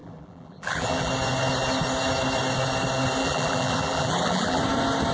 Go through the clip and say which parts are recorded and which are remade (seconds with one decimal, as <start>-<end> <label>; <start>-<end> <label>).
0.0-1.1 remade; 1.1-3.2 recorded; 3.2-4.6 remade; 4.6-5.1 recorded